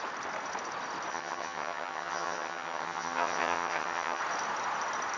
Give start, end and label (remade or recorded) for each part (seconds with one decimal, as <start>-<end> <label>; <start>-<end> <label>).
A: 0.0-1.1 recorded; 1.1-4.2 remade; 4.2-5.2 recorded